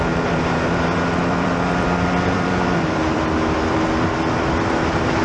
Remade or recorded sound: remade